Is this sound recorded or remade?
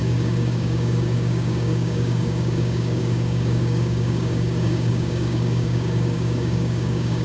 remade